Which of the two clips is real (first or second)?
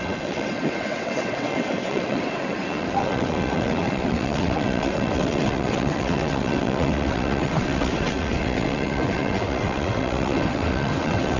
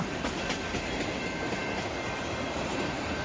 second